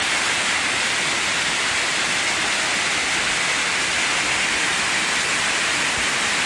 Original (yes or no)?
yes